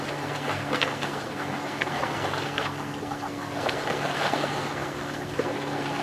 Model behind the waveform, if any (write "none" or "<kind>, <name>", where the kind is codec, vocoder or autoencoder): codec, SNAC